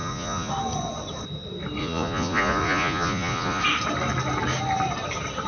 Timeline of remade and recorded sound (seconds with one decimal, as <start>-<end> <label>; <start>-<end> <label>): 0.0-0.5 remade; 0.5-1.8 recorded; 1.8-3.6 remade; 3.6-5.5 recorded